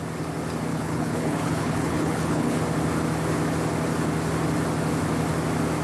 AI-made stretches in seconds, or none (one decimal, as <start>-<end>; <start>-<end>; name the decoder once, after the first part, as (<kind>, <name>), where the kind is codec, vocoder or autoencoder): 0.7-2.6 (codec, HILCodec)